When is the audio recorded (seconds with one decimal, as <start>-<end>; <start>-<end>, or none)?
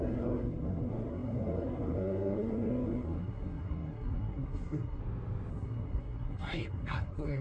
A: 5.0-5.5